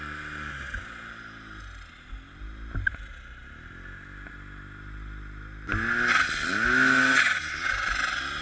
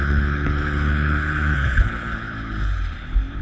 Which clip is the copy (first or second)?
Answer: second